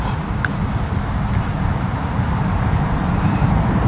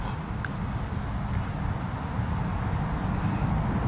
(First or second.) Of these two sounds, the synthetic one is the first